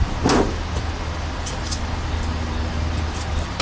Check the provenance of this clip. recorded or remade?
recorded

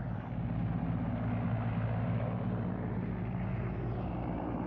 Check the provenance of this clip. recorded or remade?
recorded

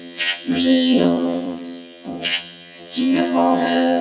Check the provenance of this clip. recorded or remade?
remade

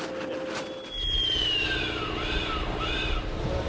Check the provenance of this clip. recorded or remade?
recorded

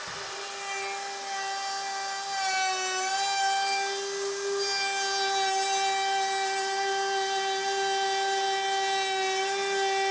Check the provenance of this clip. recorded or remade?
recorded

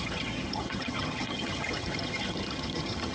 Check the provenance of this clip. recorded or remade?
remade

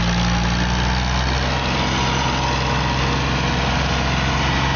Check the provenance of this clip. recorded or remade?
recorded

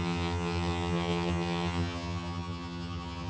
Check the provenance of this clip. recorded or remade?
remade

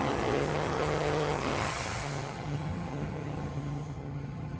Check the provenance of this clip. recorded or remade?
remade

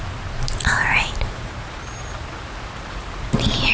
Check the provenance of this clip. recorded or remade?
recorded